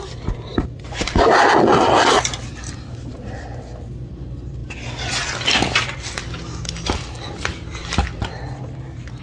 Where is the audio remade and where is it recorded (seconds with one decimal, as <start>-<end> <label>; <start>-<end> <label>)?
0.0-9.2 recorded